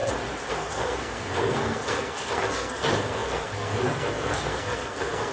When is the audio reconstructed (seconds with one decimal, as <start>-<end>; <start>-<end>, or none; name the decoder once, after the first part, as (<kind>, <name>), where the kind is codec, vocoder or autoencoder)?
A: 0.5-5.3 (codec, SNAC)